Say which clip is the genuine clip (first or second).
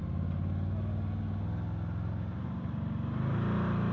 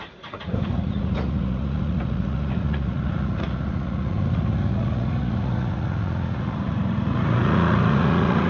first